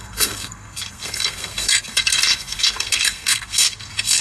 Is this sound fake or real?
fake